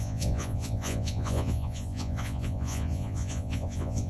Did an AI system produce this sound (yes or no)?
yes